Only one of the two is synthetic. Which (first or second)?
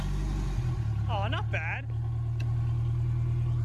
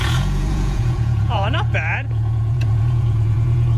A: second